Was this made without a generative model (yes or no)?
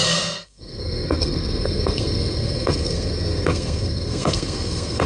no